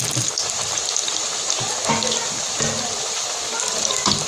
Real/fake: real